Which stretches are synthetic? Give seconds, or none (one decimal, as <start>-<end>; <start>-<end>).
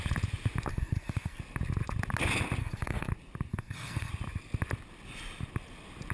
0.7-1.4; 2.6-3.1; 3.5-4.1